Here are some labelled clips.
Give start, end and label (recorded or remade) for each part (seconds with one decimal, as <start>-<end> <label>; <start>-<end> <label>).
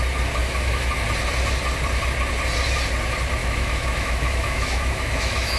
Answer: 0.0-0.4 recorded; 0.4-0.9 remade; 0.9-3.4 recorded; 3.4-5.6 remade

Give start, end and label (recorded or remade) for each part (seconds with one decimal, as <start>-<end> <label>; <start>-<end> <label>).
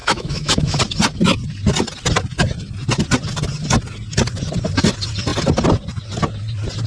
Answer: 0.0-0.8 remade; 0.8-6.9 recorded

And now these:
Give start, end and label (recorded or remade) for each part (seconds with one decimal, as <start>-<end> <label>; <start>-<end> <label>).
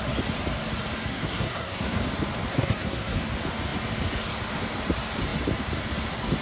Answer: 0.0-1.1 recorded; 1.1-2.0 remade; 2.0-2.5 recorded; 2.5-3.2 remade; 3.2-6.4 recorded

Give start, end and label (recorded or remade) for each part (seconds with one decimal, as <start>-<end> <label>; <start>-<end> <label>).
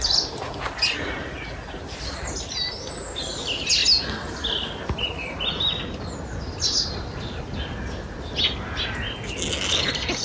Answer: 0.0-10.2 recorded